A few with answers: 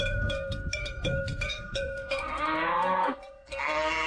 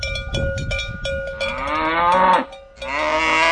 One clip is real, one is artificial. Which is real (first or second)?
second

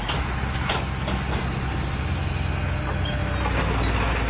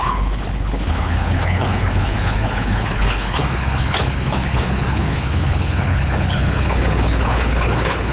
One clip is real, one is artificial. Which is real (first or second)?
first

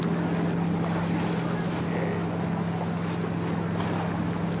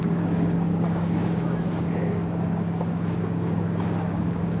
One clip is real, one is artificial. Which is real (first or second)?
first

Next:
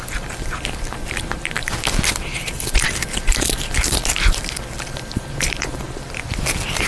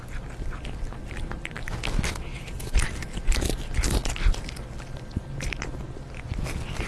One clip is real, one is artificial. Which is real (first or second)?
second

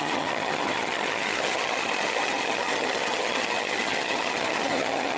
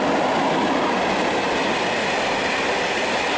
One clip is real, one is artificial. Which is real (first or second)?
second